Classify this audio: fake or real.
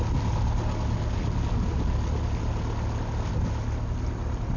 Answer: real